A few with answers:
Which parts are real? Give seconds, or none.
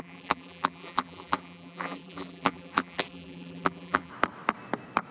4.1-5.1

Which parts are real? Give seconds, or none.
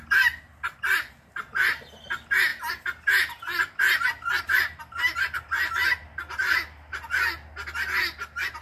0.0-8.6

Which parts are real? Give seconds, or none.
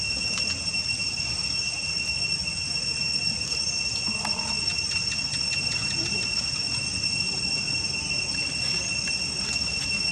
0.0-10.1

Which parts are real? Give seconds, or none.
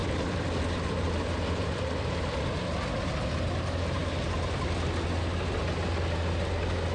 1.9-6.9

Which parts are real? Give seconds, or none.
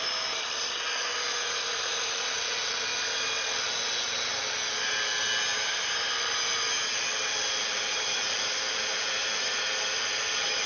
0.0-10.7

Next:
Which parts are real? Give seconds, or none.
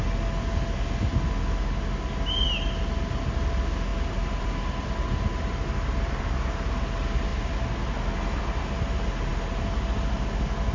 0.0-3.9; 6.2-10.7